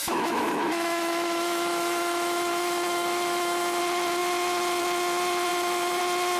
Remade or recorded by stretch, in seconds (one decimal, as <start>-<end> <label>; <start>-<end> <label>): 0.0-3.8 remade; 3.8-5.5 recorded; 5.5-6.0 remade; 6.0-6.4 recorded